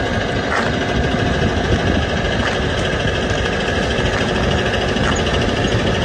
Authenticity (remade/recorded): recorded